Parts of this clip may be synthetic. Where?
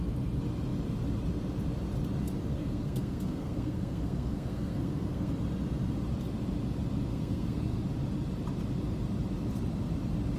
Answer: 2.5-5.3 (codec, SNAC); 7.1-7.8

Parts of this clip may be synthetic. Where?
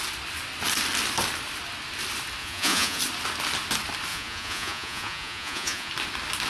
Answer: 2.4-3.0 (vocoder, Vocos); 4.1-5.9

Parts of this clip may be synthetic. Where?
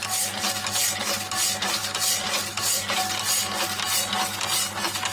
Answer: none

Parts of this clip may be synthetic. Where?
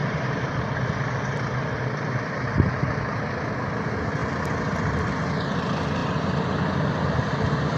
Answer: 0.0-0.6 (vocoder, BigVGAN v2); 4.2-5.1